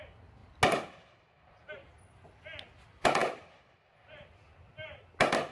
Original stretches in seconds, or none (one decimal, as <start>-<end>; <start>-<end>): 0.0-5.5